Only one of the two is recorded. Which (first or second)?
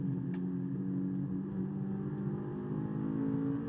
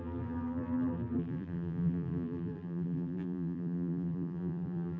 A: first